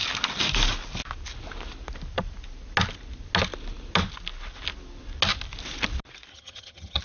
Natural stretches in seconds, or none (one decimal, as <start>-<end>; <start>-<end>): 0.0-6.3